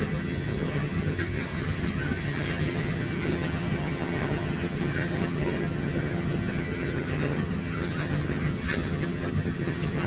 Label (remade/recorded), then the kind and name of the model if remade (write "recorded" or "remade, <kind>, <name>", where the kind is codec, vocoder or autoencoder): remade, vocoder, HiFi-GAN